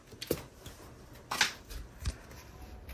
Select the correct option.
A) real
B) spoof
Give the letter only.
A